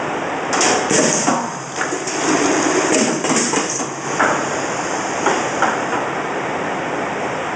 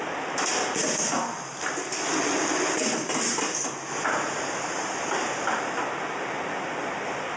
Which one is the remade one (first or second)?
first